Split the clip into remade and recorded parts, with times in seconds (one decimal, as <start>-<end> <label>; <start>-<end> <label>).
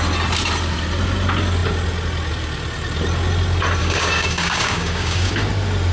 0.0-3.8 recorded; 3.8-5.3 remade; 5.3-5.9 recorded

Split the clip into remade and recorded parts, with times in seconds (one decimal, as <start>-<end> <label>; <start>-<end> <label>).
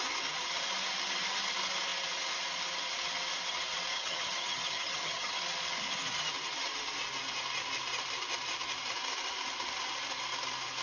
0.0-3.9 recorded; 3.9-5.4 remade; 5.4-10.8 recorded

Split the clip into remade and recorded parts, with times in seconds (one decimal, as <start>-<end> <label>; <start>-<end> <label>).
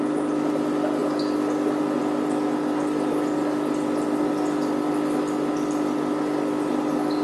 0.0-7.2 recorded